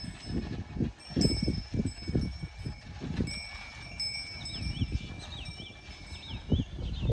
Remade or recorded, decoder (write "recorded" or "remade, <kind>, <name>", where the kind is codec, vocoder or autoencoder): recorded